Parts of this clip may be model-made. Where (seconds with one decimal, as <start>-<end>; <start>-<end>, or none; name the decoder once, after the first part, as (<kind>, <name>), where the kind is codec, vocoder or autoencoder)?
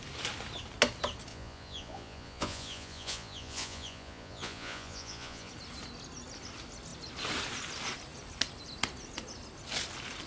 1.3-5.5 (vocoder, Vocos)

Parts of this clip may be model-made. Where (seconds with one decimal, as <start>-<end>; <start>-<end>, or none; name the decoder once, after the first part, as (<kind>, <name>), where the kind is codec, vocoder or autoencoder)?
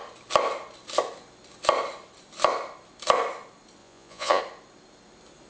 3.8-4.4 (vocoder, Vocos)